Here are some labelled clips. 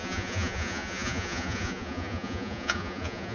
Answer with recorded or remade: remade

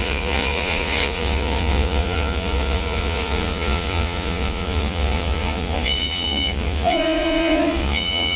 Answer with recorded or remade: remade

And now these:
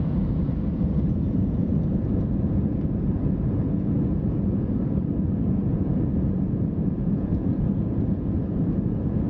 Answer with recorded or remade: remade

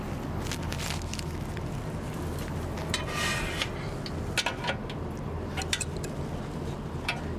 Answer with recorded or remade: recorded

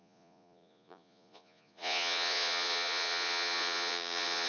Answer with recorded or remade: remade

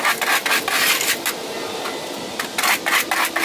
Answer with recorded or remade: recorded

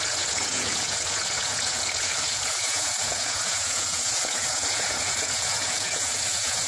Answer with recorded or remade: remade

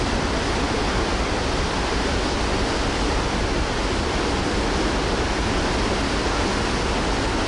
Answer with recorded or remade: recorded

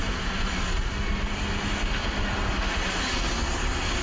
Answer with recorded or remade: recorded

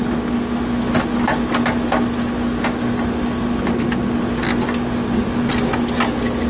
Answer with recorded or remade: recorded